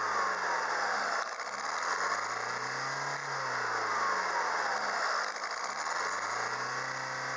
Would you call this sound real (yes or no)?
yes